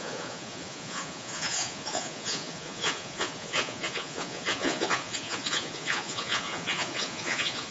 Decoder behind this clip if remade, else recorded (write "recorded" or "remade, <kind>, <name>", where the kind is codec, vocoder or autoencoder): remade, vocoder, Vocos